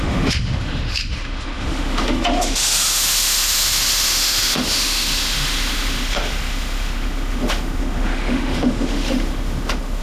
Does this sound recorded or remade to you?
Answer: remade